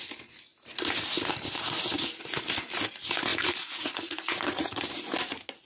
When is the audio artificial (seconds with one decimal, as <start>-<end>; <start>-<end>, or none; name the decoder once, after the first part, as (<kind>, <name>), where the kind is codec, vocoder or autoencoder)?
3.3-4.8 (vocoder, Vocos)

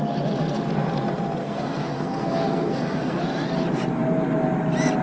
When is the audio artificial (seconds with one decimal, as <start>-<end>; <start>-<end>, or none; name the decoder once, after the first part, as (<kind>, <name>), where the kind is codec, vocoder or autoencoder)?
1.4-3.2 (codec, SNAC)

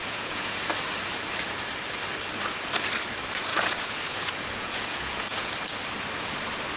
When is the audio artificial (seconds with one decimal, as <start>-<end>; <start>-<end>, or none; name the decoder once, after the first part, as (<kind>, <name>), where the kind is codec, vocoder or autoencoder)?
0.0-0.6 (vocoder, Vocos); 3.5-5.5

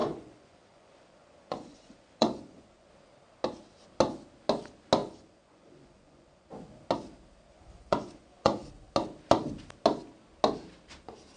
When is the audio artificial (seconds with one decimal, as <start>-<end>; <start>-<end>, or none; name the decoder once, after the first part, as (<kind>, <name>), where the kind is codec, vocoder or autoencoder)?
0.0-2.9 (vocoder, Vocos); 5.0-6.5; 7.5-8.7

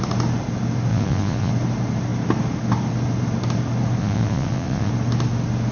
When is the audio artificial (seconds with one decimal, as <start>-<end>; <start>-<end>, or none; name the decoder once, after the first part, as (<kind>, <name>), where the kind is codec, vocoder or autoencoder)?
0.9-1.5 (vocoder, Vocos); 4.0-4.9

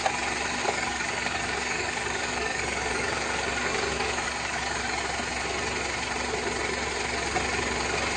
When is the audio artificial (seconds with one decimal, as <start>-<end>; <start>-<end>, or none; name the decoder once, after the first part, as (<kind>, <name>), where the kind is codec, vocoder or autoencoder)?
0.6-5.0 (codec, DAC)